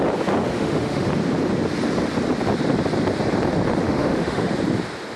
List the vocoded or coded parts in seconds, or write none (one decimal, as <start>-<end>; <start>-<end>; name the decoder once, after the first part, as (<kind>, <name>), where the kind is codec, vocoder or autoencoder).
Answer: 0.5-1.1 (autoencoder, DAC-VAE); 3.8-4.5